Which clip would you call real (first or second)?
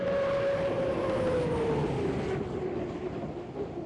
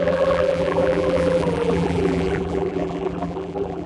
first